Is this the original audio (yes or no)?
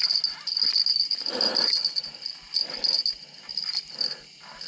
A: yes